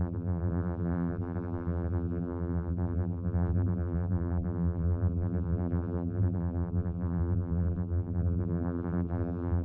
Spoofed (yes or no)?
yes